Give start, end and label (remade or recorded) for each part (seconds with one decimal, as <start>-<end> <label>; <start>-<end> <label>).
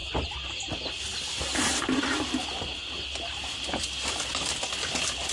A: 0.0-5.3 recorded